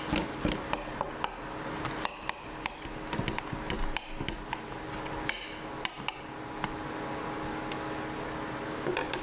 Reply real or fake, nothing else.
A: real